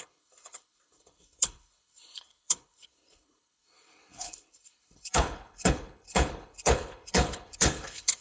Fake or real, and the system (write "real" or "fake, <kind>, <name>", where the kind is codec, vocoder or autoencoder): fake, codec, HILCodec